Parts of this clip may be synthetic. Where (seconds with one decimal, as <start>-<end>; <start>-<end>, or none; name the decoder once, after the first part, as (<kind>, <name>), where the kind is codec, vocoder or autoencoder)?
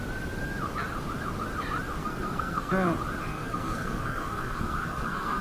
2.0-2.7 (codec, SNAC); 3.3-5.4